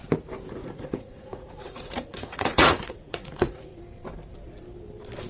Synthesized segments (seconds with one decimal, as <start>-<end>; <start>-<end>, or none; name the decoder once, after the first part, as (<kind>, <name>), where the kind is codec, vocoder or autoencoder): 0.6-3.8 (vocoder, Vocos)